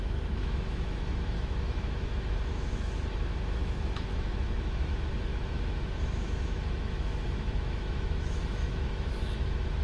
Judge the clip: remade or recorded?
remade